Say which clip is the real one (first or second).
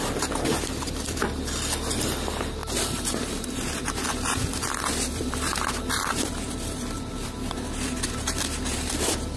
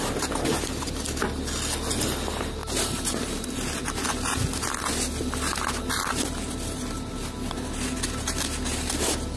second